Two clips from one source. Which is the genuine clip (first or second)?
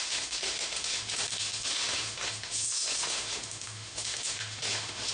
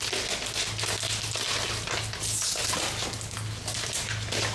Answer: second